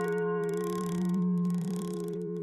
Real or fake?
fake